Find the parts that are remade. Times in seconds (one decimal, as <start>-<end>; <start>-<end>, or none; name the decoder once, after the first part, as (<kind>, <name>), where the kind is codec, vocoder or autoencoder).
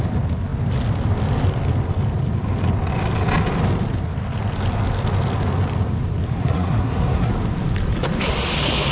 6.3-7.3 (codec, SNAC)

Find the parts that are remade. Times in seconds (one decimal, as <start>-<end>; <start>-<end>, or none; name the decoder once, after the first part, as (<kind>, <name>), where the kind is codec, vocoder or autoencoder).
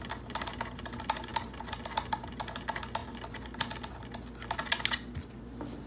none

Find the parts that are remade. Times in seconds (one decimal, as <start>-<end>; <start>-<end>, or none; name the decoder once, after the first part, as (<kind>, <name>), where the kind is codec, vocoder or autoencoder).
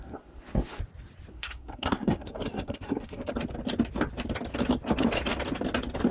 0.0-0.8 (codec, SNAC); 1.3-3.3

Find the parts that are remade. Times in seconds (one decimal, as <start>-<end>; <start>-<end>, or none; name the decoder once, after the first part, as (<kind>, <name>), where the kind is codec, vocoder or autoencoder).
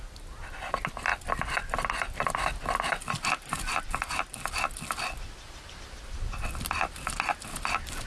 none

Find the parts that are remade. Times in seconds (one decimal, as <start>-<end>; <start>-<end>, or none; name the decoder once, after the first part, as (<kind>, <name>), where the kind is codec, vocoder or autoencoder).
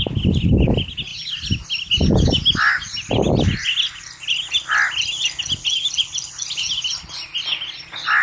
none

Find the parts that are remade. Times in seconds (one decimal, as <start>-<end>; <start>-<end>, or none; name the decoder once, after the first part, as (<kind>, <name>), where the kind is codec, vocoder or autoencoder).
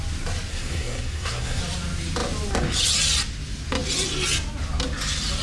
0.5-1.6 (codec, SNAC)